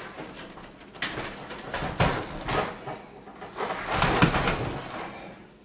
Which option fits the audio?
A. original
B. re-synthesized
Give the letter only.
A